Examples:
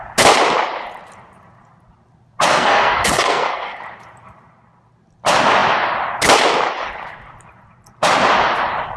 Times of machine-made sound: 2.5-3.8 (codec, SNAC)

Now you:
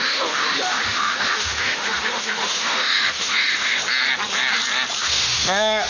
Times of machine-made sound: 0.0-3.8 (autoencoder, DAC-VAE); 5.0-5.9

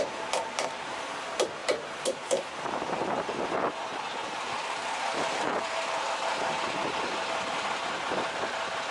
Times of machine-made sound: 1.6-2.8 (vocoder, BigVGAN v2); 4.2-6.1

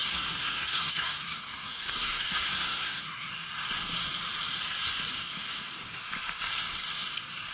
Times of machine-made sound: 0.0-3.3 (codec, SNAC)